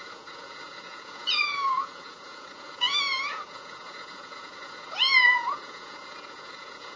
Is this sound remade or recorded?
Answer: remade